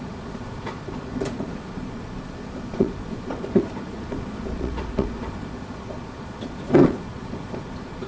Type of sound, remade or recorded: remade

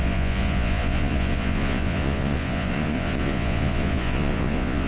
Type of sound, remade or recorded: remade